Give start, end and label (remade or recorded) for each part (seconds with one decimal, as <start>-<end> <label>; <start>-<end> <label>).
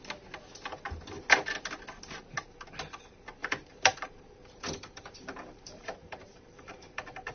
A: 0.0-3.4 recorded; 3.4-7.3 remade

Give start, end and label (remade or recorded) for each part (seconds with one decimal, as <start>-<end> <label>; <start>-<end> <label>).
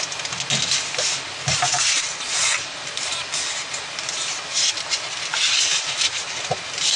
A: 0.0-1.7 recorded; 1.7-5.9 remade; 5.9-7.0 recorded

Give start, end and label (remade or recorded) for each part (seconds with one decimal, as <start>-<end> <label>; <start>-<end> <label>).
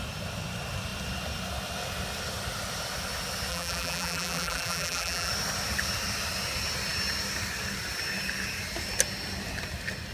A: 0.0-3.5 recorded; 3.5-5.3 remade; 5.3-10.1 recorded